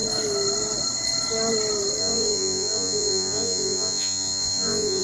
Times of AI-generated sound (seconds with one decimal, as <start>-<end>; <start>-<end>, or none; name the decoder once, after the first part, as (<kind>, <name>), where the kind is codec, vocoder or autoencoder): 2.0-5.0 (vocoder, Vocos)